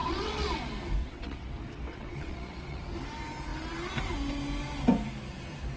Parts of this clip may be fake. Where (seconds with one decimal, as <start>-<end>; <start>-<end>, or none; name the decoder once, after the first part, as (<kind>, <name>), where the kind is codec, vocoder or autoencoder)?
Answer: 0.0-0.6 (vocoder, WaveNeXt); 1.0-1.5; 1.9-2.8